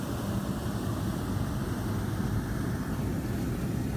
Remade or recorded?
recorded